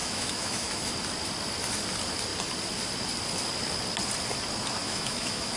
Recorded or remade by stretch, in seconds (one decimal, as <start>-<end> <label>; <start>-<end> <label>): 0.0-0.9 remade; 0.9-4.8 recorded; 4.8-5.6 remade